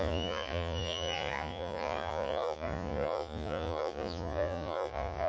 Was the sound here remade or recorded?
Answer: remade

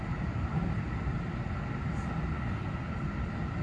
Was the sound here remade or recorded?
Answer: recorded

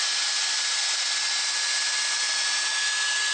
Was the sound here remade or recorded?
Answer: recorded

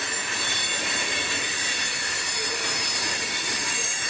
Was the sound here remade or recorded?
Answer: recorded